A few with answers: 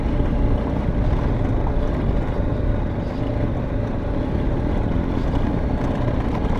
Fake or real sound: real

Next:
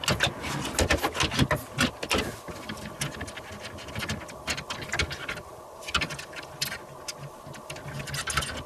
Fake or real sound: real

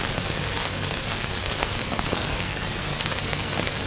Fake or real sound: fake